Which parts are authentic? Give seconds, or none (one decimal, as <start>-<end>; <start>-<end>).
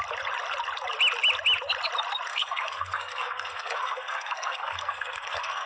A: 0.0-2.3